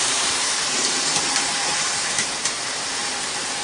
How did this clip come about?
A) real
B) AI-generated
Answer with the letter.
B